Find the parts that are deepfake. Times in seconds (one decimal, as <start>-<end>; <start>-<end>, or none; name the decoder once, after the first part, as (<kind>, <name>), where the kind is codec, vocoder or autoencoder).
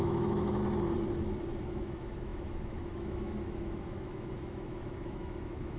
0.0-0.6 (autoencoder, DAC-VAE); 1.6-5.8